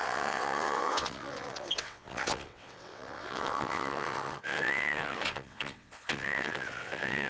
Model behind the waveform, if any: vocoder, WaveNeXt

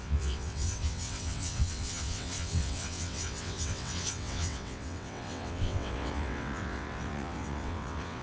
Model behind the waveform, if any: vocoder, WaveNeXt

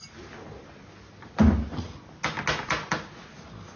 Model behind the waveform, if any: none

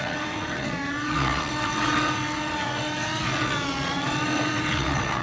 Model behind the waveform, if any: vocoder, WaveNeXt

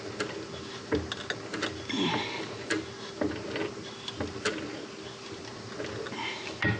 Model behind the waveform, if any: none